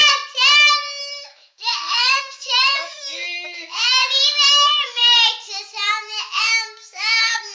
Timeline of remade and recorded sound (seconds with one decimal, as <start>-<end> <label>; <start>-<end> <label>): 0.0-1.0 recorded; 1.0-4.0 remade; 4.0-4.5 recorded; 4.5-5.0 remade; 5.0-5.9 recorded; 5.9-7.5 remade